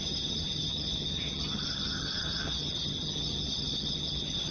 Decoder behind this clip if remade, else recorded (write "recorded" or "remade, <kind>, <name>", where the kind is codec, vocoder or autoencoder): remade, vocoder, HiFi-GAN